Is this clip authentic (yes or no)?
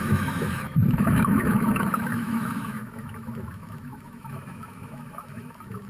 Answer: no